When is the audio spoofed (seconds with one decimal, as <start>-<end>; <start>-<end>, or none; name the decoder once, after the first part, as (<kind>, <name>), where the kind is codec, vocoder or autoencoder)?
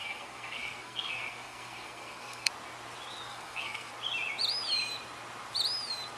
0.0-2.5 (codec, SNAC); 3.3-3.9